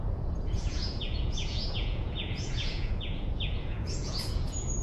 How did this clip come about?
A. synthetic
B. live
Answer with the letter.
A